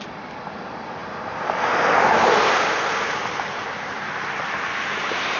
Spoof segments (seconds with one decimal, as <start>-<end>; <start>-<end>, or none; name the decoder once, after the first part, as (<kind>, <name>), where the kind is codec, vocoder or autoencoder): none